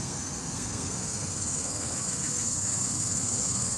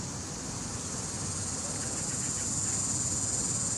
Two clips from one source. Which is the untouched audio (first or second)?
second